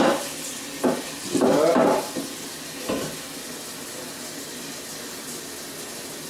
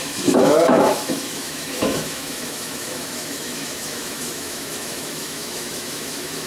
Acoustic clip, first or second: first